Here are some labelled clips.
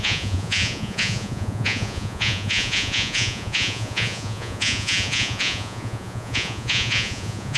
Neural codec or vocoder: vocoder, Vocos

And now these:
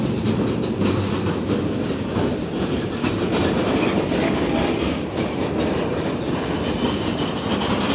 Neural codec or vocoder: vocoder, BigVGAN v2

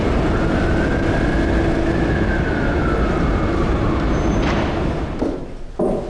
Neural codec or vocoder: none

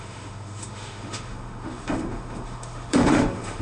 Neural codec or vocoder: autoencoder, DAC-VAE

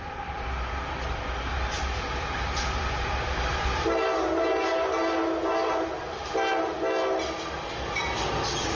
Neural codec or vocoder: none